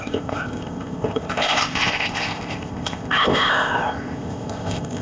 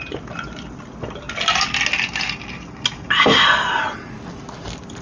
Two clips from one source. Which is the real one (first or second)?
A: second